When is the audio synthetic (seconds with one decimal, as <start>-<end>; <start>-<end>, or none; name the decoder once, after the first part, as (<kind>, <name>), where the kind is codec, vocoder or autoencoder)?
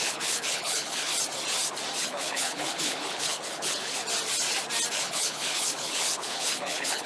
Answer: 0.0-1.1 (codec, HILCodec); 2.0-4.0; 4.9-7.1